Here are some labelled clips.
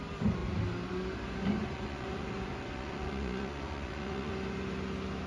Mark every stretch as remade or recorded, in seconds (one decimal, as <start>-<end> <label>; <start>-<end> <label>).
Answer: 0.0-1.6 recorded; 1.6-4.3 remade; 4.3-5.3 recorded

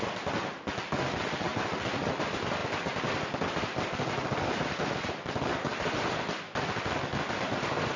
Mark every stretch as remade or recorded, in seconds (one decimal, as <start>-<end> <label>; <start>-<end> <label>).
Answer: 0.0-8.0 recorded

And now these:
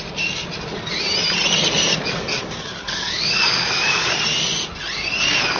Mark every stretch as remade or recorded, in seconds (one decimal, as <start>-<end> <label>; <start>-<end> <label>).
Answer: 0.0-1.9 recorded; 1.9-4.1 remade; 4.1-5.6 recorded

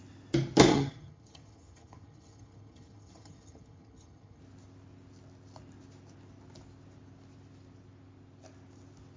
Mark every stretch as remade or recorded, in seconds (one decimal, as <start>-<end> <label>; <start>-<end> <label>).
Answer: 0.0-0.7 recorded; 0.7-4.4 remade; 4.4-9.2 recorded